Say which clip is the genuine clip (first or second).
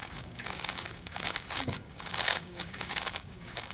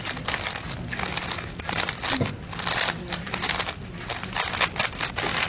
second